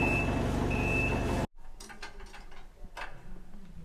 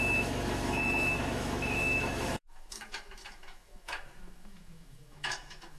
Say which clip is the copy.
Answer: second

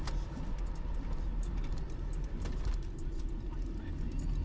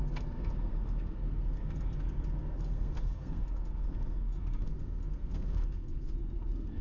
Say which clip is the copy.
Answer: second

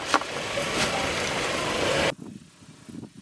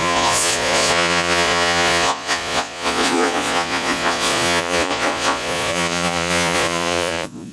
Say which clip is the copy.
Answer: second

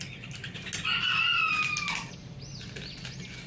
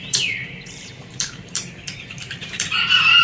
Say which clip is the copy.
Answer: second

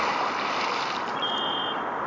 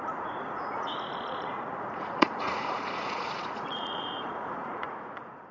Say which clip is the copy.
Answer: second